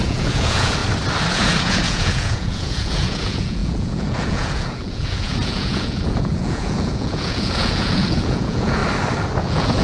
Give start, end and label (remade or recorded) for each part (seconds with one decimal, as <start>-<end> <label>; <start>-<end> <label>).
0.0-0.8 remade; 0.8-1.3 recorded; 1.3-8.8 remade; 8.8-9.4 recorded; 9.4-9.8 remade